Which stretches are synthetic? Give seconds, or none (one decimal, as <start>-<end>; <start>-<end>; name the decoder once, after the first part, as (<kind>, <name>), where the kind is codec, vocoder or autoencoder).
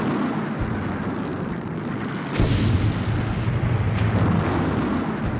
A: none